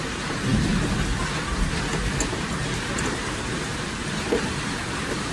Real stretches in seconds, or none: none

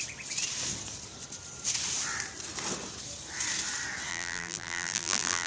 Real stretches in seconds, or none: 0.0-4.1

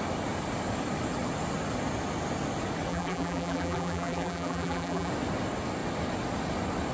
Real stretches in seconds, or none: 0.0-2.9; 5.1-6.9

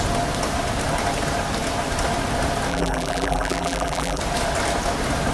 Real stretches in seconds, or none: 0.0-2.7; 4.2-5.3

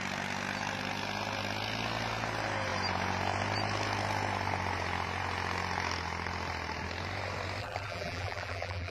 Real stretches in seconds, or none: 0.0-7.6

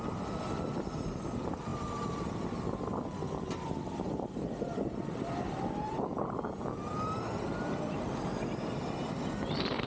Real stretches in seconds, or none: 0.0-1.7; 2.3-9.9